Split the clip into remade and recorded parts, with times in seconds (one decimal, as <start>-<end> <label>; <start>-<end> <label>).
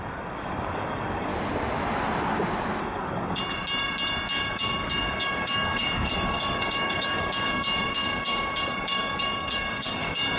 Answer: 0.0-1.3 remade; 1.3-2.8 recorded; 2.8-3.4 remade; 3.4-4.3 recorded; 4.3-10.4 remade